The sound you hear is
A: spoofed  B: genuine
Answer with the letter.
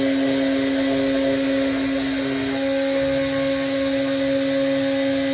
B